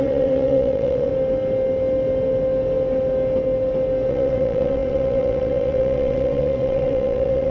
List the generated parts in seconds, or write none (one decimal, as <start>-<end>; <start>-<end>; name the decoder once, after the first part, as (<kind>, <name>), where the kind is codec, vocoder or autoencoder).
0.0-1.1 (vocoder, WaveNeXt); 4.1-7.5